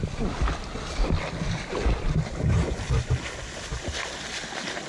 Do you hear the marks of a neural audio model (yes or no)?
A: no